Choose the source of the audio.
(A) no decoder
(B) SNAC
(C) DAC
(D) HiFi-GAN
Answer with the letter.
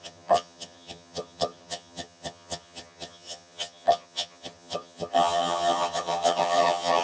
D